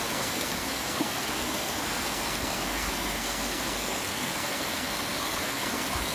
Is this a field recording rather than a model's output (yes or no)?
no